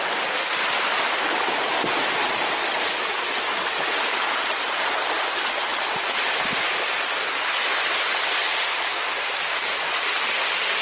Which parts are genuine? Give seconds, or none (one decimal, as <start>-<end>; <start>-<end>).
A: 0.0-5.7; 7.7-10.8

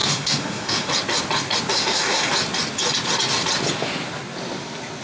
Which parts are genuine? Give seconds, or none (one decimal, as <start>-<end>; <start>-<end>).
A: 0.9-1.7; 2.3-5.0

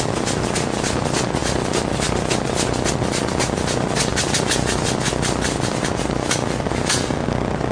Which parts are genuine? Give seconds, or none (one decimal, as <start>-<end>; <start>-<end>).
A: 0.0-7.7

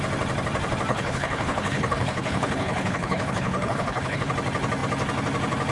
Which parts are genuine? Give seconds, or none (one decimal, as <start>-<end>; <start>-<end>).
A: 0.0-0.9; 4.3-5.7

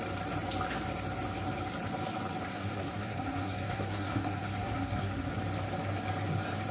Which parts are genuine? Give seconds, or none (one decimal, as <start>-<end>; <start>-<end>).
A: 0.0-2.5; 5.3-6.7

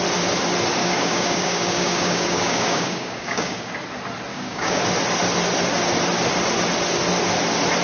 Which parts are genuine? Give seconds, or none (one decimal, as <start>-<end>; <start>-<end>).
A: 0.0-0.8; 3.7-4.3; 4.8-7.8

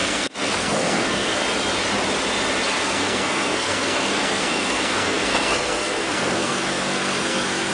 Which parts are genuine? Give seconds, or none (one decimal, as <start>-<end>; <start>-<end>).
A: 1.4-2.8

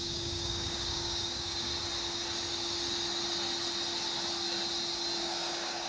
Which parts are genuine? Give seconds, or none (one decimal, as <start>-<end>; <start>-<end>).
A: 1.7-5.2